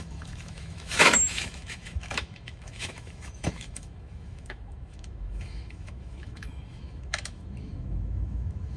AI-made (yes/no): yes